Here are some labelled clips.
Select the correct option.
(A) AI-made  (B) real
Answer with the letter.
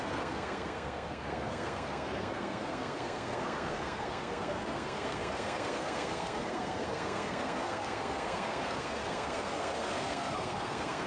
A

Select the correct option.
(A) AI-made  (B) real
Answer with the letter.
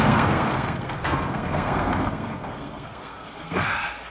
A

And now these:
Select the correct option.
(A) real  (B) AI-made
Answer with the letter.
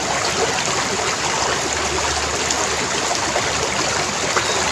A